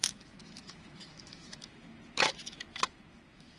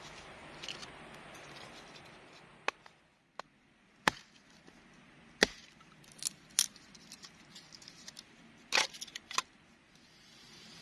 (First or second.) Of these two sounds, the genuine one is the second